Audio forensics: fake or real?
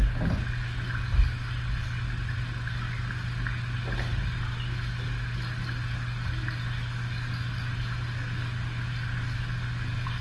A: real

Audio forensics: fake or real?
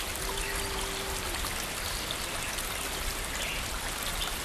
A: real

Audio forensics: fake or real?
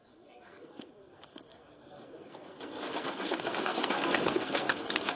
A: fake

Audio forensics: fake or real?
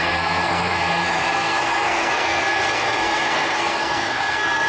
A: fake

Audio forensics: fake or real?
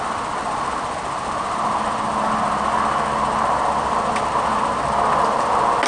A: real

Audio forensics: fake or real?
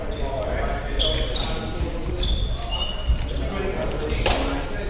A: real